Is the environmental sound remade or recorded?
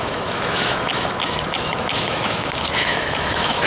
remade